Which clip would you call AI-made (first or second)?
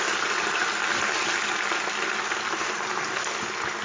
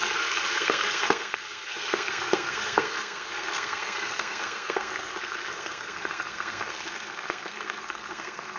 second